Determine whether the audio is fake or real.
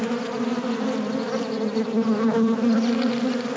real